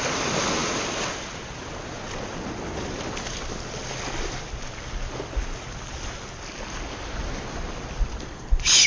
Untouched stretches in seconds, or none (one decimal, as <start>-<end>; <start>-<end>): 0.0-8.9